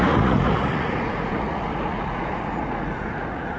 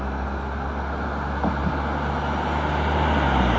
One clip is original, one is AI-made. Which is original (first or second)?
second